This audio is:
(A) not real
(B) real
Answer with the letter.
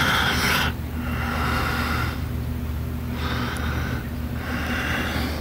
B